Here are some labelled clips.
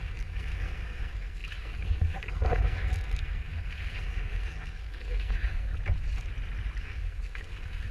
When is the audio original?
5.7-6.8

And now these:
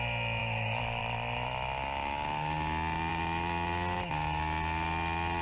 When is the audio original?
0.0-0.4; 1.0-5.4

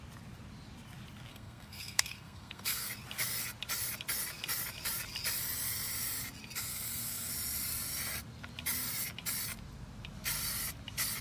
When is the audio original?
0.0-1.3; 2.9-6.7; 7.3-11.2